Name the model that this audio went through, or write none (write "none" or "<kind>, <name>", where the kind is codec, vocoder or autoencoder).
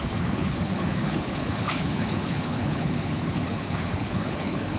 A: codec, HILCodec